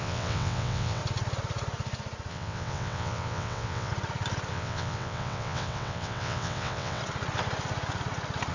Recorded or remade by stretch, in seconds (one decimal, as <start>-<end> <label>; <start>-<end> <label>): 0.0-1.0 remade; 1.0-2.3 recorded; 2.3-3.9 remade; 3.9-4.5 recorded; 4.5-7.0 remade; 7.0-8.5 recorded